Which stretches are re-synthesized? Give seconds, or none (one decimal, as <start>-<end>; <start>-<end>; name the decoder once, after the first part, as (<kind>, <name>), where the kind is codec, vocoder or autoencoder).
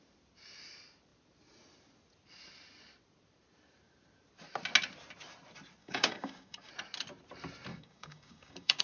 5.8-6.7 (codec, DAC); 7.7-8.8